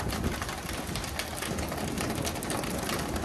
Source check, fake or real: real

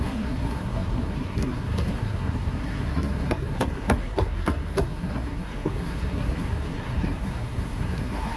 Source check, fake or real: fake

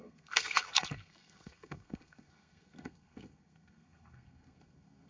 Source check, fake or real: fake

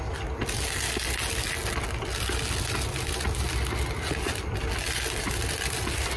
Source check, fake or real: real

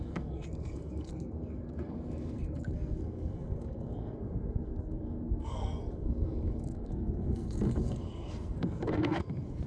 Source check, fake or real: fake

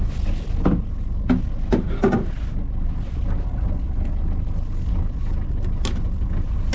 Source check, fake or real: real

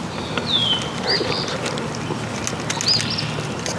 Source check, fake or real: real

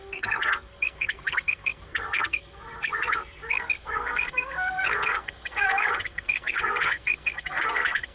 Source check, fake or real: fake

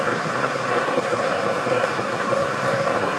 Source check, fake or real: fake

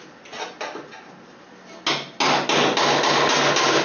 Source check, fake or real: real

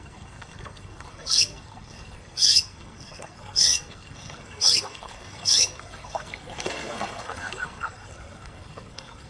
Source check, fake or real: fake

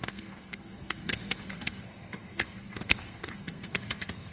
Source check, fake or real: fake